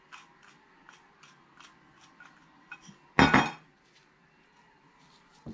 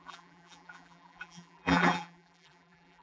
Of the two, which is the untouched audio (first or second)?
first